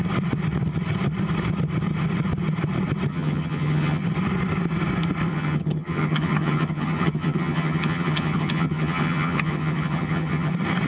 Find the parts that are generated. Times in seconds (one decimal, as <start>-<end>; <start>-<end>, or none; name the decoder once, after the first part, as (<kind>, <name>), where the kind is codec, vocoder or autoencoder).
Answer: 3.1-4.0 (vocoder, HiFi-GAN); 5.3-10.5